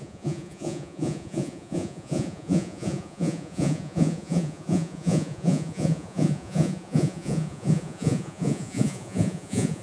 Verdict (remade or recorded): remade